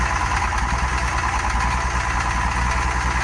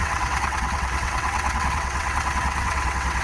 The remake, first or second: second